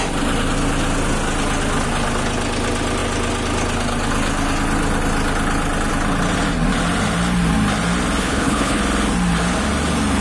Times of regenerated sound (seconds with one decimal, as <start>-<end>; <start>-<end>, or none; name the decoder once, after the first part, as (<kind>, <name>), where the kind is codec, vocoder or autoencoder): 8.2-8.8 (codec, HILCodec)